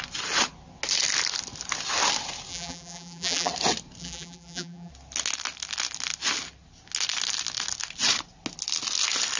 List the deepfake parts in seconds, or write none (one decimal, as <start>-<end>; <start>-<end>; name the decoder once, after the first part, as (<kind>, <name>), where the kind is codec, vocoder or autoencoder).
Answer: 2.5-3.5 (vocoder, BigVGAN v2); 4.0-4.9